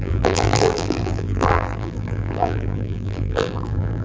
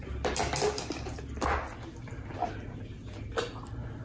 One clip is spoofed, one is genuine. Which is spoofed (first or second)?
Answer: first